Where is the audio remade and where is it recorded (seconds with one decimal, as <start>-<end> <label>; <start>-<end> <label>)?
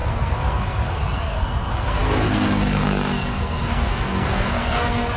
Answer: 0.0-5.2 remade